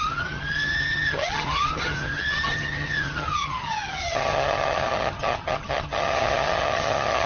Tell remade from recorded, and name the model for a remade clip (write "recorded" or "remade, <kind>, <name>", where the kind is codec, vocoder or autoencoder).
remade, vocoder, HiFi-GAN